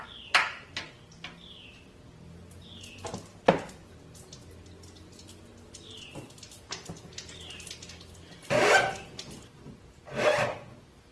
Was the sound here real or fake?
real